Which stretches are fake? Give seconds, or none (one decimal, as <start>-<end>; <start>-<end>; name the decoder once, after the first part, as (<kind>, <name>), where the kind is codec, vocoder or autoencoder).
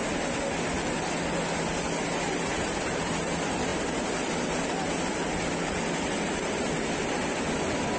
none